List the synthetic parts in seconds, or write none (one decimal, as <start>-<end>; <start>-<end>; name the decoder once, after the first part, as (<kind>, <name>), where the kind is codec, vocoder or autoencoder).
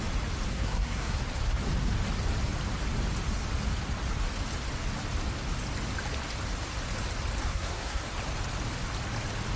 0.5-1.2 (codec, SNAC); 7.5-8.0